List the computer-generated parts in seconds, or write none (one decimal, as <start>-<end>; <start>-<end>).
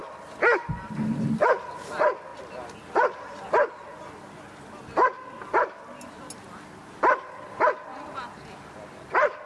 6.8-7.6